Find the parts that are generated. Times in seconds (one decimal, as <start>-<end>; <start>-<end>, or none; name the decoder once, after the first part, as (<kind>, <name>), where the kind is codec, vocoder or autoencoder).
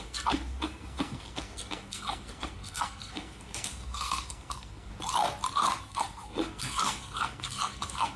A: 0.0-4.9 (codec, SNAC); 5.8-8.2